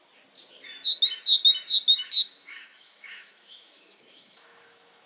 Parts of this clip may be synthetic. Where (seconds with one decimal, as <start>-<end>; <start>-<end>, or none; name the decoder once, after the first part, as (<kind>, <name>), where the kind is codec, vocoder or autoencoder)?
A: 1.9-5.1 (autoencoder, DAC-VAE)